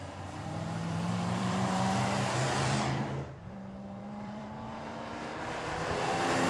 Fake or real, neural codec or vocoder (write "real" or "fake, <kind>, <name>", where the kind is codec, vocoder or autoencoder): fake, vocoder, BigVGAN v2